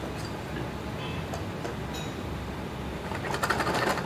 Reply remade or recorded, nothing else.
recorded